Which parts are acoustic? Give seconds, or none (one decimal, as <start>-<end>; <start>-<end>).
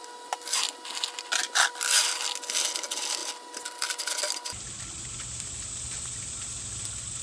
0.0-7.2